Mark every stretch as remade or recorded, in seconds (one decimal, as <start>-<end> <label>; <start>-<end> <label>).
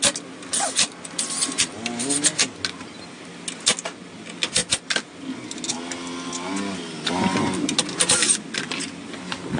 0.0-9.6 recorded